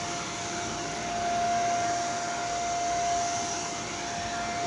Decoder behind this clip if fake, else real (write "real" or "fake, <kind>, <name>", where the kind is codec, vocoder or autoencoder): real